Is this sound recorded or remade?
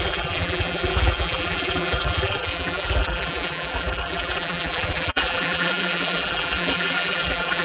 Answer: remade